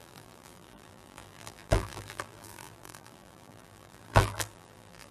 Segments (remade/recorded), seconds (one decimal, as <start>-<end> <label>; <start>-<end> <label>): 0.0-5.1 remade